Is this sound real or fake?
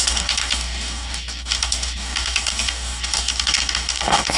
fake